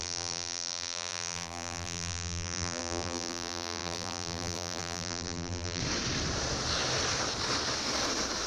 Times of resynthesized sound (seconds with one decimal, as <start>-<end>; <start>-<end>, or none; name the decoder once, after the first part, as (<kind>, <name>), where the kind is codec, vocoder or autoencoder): 0.0-5.8 (vocoder, BigVGAN v2)